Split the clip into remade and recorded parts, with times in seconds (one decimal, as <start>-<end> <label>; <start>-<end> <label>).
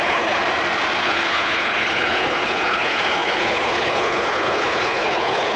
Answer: 0.0-0.4 remade; 0.4-1.0 recorded; 1.0-5.6 remade